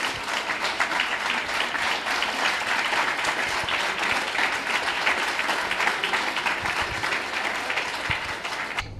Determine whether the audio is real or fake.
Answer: real